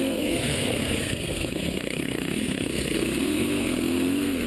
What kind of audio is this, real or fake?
fake